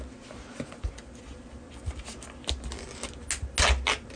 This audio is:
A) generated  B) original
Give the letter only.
B